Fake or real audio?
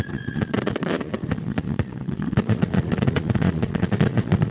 fake